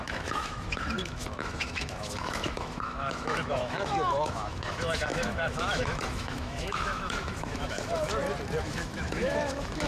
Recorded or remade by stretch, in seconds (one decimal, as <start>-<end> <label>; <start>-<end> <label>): 0.0-8.1 remade; 8.1-8.6 recorded; 8.6-9.9 remade